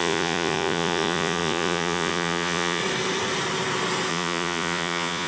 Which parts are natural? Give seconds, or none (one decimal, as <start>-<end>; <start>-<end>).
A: 2.8-4.1